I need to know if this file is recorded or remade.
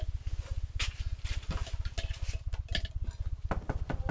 recorded